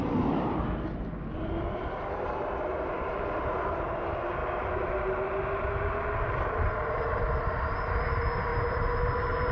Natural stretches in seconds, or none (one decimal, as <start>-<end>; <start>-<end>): 0.0-9.5